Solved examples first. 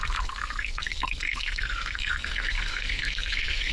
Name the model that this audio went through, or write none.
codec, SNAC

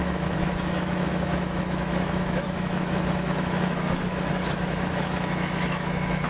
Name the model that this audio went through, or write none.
autoencoder, DAC-VAE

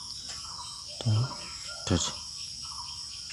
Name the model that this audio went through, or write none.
none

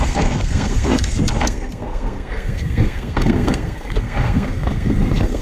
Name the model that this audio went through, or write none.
codec, SNAC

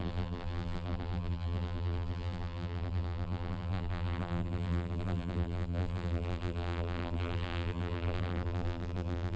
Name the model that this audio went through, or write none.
vocoder, BigVGAN v2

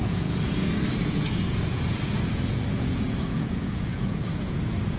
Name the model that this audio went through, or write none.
vocoder, Vocos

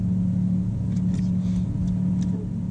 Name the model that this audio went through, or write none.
none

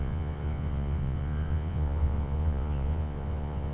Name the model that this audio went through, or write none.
vocoder, Vocos